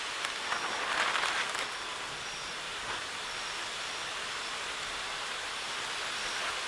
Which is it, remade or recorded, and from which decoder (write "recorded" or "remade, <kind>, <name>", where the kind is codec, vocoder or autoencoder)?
recorded